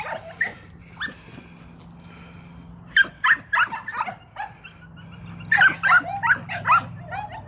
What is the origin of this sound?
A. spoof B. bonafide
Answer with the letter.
B